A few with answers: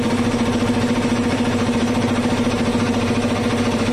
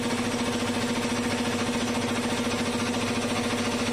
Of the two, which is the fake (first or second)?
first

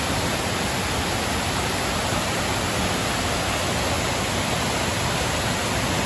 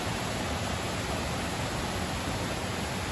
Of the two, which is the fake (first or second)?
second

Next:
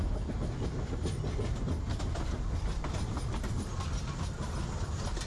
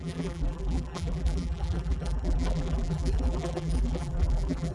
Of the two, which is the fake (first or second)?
second